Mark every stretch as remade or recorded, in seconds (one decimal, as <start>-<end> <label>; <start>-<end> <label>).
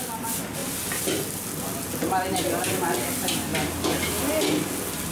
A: 0.0-5.1 recorded